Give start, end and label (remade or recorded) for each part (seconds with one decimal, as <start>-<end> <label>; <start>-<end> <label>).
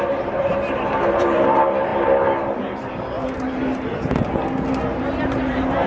0.0-1.9 remade; 1.9-5.0 recorded; 5.0-5.9 remade